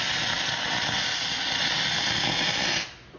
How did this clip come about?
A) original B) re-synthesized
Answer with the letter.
A